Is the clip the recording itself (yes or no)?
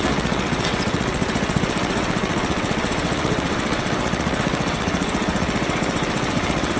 no